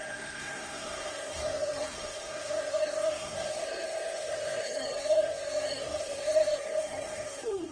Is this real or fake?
fake